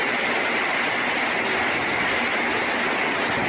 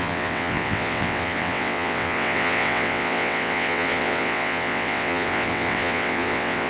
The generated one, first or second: second